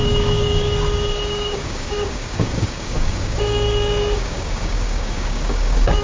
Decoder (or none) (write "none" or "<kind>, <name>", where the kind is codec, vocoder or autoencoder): codec, DAC